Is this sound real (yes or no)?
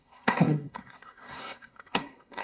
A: no